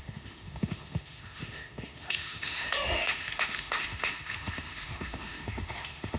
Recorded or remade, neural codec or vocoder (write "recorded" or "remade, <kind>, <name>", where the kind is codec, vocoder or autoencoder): remade, autoencoder, DAC-VAE